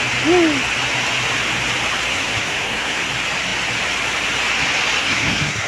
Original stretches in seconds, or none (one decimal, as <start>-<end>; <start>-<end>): 0.0-2.1; 3.0-5.0